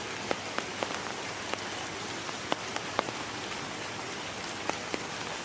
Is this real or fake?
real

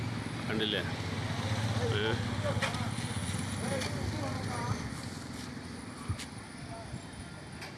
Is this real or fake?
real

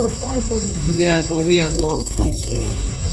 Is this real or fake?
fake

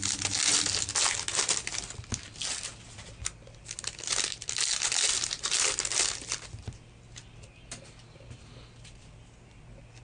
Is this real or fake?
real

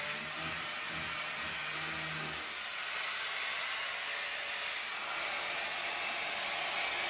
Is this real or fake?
real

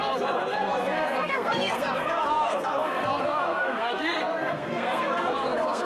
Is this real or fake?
fake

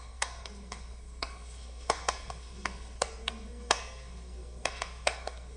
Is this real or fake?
fake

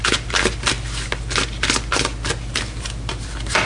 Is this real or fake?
real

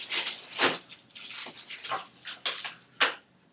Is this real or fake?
real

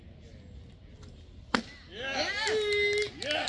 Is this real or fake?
real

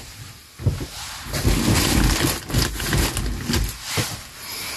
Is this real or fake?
real